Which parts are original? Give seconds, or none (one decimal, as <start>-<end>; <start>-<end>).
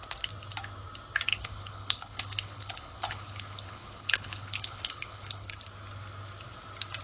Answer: 0.0-1.3; 5.5-7.0